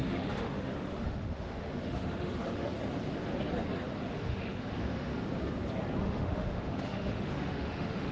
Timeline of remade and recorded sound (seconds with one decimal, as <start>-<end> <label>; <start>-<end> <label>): 0.0-2.7 remade; 2.7-4.1 recorded; 4.1-5.1 remade; 5.1-6.0 recorded; 6.0-8.1 remade